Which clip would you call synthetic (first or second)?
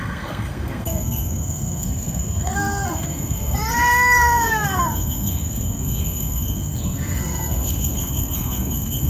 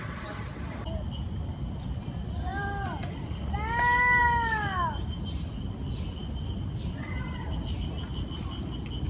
first